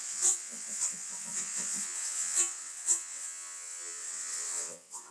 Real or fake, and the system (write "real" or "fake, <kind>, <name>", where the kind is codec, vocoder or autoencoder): fake, vocoder, WaveNeXt